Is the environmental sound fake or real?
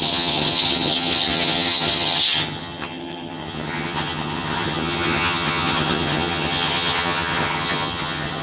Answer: fake